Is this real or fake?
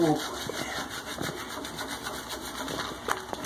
real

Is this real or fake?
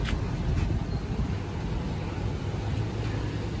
real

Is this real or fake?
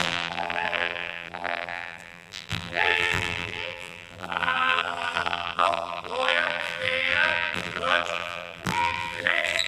fake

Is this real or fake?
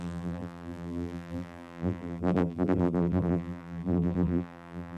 fake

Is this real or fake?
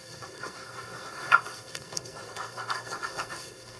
fake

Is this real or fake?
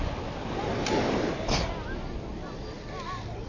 real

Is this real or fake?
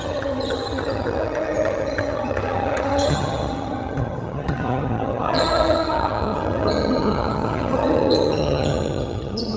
fake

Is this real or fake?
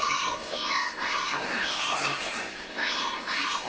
fake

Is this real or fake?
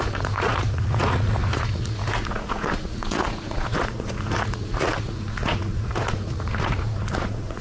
fake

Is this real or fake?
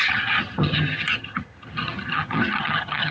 fake